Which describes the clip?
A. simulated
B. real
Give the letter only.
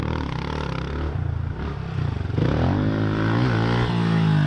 B